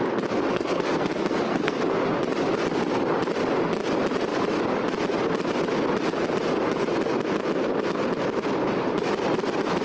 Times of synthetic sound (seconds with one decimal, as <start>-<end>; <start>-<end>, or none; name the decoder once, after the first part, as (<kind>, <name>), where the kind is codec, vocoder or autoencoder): 0.5-1.8 (codec, SNAC)